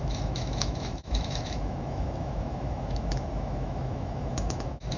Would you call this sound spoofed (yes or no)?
yes